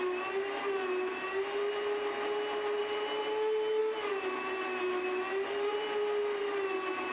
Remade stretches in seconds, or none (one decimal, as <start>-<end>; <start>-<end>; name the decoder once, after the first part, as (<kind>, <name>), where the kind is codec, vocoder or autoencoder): none